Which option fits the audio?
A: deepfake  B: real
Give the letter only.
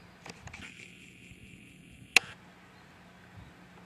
B